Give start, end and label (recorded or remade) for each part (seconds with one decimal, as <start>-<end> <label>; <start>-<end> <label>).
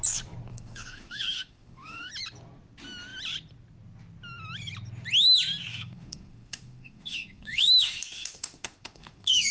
0.0-0.5 recorded; 0.5-2.1 remade; 2.1-5.7 recorded; 5.7-9.5 remade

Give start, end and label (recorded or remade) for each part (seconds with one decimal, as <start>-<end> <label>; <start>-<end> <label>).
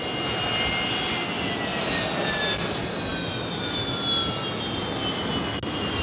0.0-6.0 recorded